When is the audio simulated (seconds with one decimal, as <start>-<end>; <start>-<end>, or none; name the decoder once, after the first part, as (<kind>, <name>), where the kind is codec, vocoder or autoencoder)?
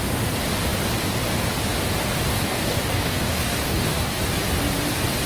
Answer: 2.3-4.2 (codec, DAC)